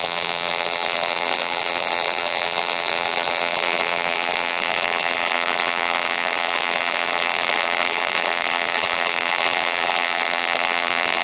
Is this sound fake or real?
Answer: fake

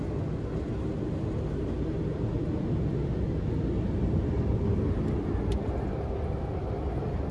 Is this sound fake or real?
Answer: real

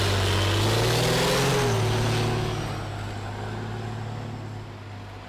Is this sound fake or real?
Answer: real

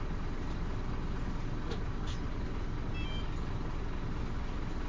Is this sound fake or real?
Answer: real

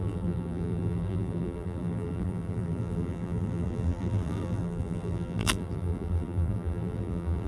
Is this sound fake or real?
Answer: fake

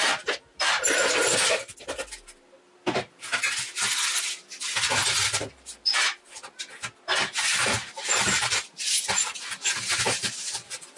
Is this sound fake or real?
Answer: real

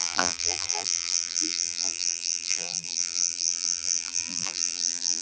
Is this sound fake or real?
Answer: fake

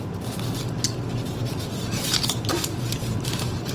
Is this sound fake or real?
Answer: fake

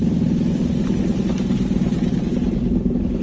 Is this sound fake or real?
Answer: real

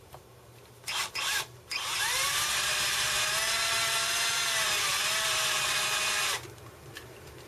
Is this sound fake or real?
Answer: fake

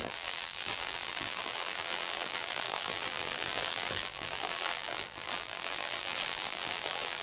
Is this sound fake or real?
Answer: fake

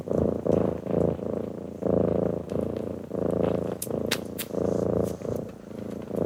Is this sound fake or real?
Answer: real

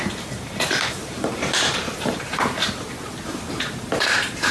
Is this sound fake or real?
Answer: fake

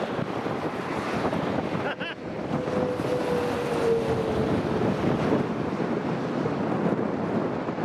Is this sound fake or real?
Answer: real